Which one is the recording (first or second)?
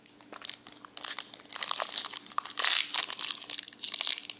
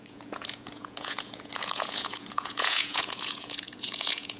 first